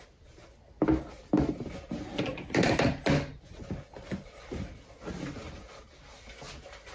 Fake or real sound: real